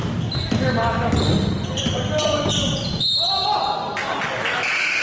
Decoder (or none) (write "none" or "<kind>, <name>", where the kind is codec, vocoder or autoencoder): none